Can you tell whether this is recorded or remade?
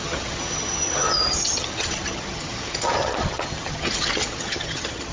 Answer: remade